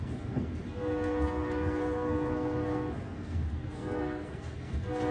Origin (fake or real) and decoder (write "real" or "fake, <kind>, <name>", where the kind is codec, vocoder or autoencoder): fake, codec, SNAC